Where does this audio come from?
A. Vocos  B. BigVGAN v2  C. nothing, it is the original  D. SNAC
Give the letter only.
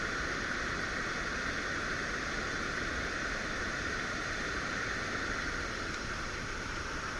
B